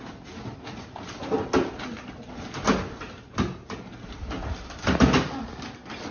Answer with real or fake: real